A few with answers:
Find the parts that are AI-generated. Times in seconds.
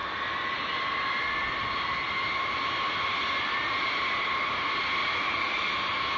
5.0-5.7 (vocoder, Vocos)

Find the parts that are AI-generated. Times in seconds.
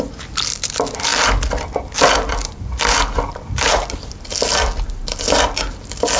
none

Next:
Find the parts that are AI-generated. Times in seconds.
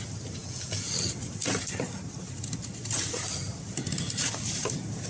0.4-0.9 (vocoder, Vocos)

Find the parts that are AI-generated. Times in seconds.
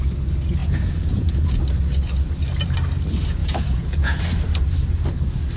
0.6-1.4 (vocoder, Vocos); 3.4-4.2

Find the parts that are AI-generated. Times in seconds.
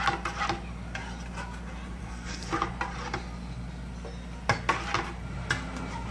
2.0-2.5 (codec, SNAC)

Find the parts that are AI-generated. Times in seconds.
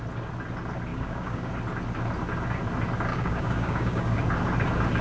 0.9-1.5 (codec, DAC); 3.1-4.2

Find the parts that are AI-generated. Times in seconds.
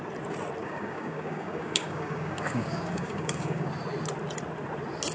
0.6-3.7 (codec, DAC)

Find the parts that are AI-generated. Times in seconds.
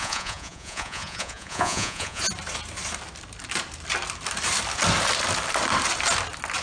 0.0-2.2 (vocoder, Vocos)